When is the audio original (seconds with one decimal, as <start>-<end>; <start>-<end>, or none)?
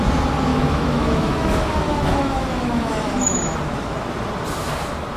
0.0-0.5; 3.6-5.2